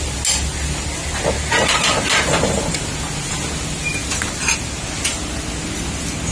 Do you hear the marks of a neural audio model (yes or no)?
no